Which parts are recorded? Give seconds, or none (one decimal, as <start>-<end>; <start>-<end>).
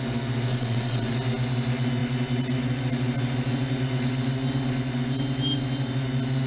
0.0-0.5; 1.1-6.5